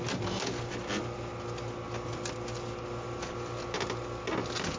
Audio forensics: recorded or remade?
recorded